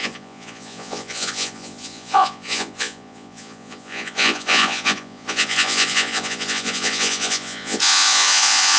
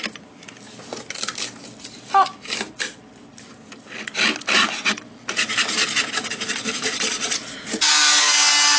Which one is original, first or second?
second